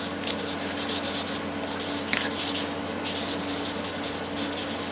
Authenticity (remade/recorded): recorded